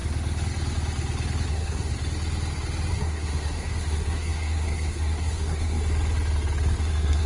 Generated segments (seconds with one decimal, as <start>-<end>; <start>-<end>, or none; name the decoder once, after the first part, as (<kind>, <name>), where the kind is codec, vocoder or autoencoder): 1.5-1.9 (codec, SNAC); 2.9-5.8; 6.8-7.3